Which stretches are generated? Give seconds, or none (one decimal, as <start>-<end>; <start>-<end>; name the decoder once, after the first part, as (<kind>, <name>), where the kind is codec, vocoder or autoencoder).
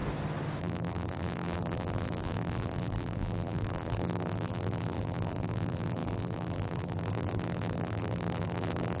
0.6-9.0 (vocoder, BigVGAN v2)